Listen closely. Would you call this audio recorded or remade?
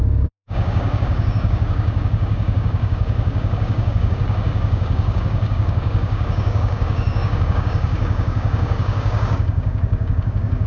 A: remade